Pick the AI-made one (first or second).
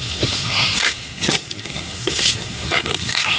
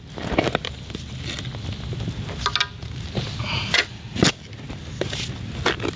first